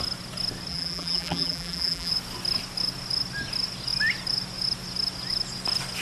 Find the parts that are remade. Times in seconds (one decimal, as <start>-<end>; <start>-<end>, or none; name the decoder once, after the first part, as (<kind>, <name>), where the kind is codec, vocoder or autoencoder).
0.7-2.1 (vocoder, BigVGAN v2)